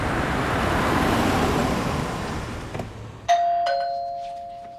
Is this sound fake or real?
real